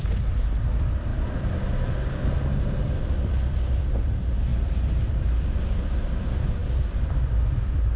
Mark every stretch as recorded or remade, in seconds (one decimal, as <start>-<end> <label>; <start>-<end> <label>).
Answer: 0.0-8.0 remade